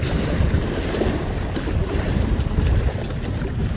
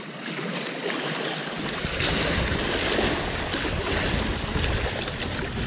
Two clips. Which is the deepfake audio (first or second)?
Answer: first